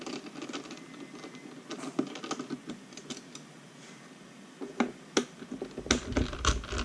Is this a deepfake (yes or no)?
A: no